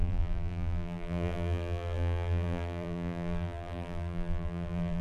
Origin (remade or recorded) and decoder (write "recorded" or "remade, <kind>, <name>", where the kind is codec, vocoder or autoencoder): remade, vocoder, BigVGAN v2